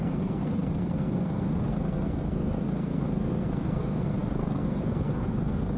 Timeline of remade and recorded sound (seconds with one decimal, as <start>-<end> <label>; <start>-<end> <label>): 0.0-5.8 remade